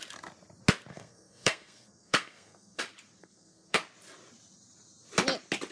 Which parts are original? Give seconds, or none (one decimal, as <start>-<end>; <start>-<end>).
0.0-0.9; 2.8-3.2; 3.8-5.7